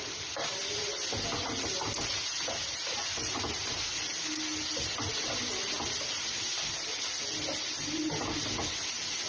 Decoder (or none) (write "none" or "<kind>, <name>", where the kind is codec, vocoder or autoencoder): none